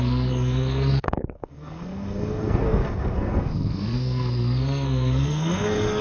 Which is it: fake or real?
fake